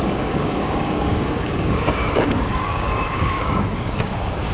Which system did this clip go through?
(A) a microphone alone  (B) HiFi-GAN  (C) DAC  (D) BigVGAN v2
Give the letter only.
C